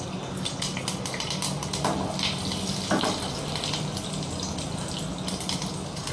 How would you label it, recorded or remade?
recorded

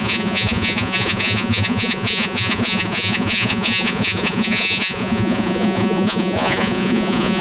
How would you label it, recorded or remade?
remade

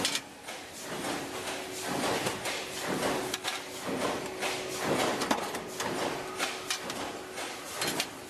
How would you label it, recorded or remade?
recorded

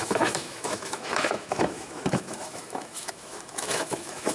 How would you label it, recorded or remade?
remade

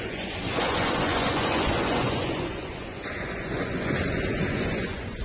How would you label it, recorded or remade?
remade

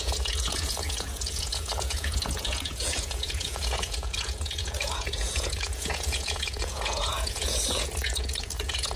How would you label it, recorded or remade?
remade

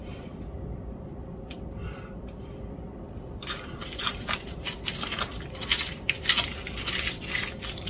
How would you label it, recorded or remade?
remade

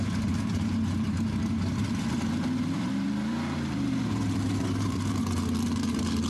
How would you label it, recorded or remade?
remade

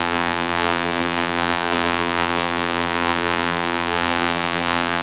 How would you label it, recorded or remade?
remade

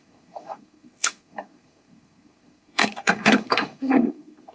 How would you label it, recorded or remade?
remade